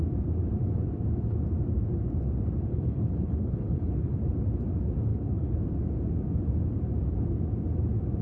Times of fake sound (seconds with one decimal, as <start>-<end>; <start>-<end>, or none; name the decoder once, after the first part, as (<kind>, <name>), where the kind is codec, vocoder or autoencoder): 2.7-4.1 (codec, HILCodec); 5.1-5.6